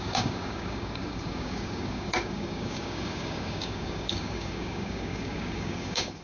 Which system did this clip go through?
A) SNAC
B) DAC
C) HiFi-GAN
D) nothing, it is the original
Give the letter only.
B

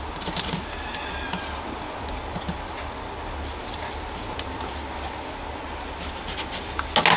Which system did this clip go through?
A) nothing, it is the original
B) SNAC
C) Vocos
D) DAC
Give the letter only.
A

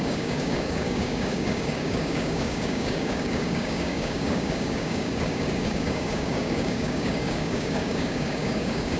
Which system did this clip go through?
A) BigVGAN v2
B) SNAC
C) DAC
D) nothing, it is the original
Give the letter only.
C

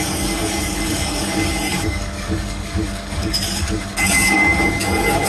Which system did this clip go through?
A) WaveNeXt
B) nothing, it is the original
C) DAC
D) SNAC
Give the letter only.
C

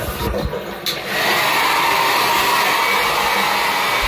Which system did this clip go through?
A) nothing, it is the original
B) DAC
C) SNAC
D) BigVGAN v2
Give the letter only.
A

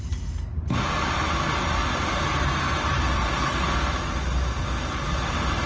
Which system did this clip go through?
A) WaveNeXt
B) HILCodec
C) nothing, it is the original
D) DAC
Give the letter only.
C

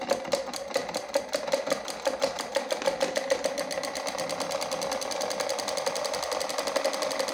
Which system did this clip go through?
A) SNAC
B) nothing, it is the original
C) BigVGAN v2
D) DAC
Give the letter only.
B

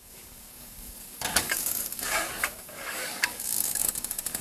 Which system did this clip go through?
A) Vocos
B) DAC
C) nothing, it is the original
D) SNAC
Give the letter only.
B